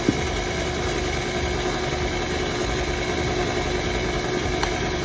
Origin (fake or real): real